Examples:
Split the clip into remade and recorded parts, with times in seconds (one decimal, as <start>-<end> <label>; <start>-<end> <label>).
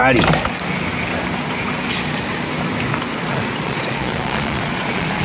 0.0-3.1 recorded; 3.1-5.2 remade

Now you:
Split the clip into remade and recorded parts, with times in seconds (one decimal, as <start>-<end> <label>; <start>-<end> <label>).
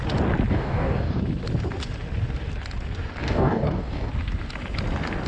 0.0-0.5 recorded; 0.5-1.2 remade; 1.2-3.2 recorded; 3.2-4.1 remade; 4.1-5.3 recorded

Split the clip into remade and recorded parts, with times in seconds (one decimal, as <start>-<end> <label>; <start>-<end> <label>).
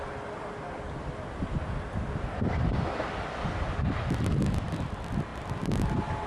0.0-6.3 recorded